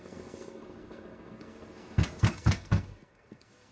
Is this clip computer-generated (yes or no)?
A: yes